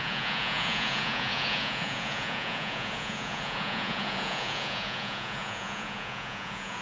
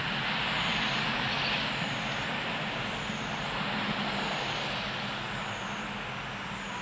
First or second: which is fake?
first